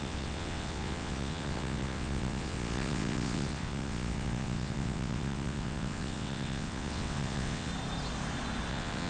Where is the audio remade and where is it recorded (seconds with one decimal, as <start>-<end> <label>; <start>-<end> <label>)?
0.0-7.7 remade; 7.7-8.7 recorded; 8.7-9.1 remade